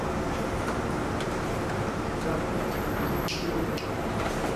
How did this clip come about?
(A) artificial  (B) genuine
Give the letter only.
A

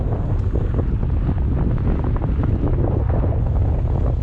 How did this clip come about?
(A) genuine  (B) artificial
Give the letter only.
A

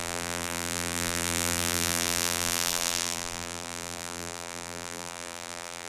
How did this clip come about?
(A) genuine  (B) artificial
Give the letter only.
B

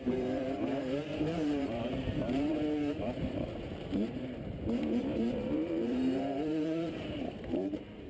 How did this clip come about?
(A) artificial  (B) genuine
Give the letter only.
A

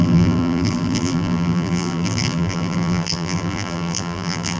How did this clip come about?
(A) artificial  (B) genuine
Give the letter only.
A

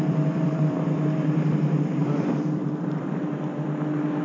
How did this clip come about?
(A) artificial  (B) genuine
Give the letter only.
A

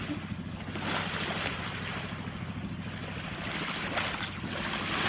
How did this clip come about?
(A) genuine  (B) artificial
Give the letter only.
A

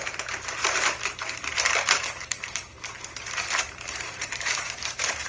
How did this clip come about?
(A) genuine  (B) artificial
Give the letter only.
B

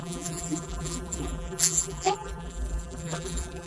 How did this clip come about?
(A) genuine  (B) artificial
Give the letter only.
B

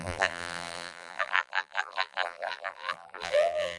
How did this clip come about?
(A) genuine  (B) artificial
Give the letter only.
B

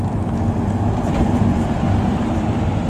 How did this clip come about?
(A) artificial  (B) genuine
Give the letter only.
A